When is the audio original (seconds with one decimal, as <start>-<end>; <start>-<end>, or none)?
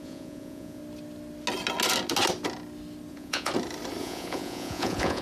0.8-3.1; 3.5-4.0